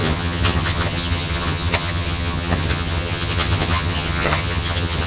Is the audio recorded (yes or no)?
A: no